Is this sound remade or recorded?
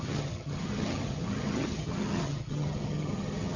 remade